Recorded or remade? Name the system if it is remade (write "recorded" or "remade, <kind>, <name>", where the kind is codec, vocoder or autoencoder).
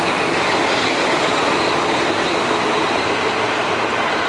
recorded